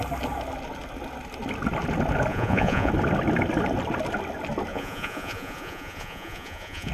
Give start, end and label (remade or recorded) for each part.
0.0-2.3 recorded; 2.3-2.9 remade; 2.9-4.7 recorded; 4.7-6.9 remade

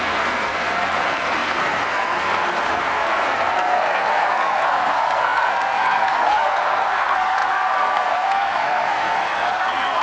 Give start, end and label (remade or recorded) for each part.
0.0-10.0 remade

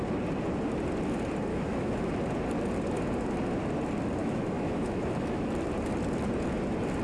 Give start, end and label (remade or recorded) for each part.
0.0-1.5 recorded; 1.5-2.1 remade; 2.1-4.2 recorded; 4.2-5.5 remade; 5.5-7.0 recorded